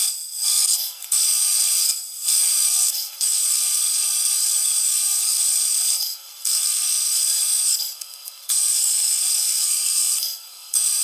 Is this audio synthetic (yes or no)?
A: yes